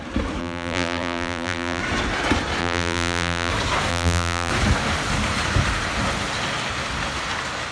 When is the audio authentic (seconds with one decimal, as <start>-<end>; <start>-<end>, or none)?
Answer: 0.0-0.4; 1.8-2.6; 3.5-3.9; 4.5-7.7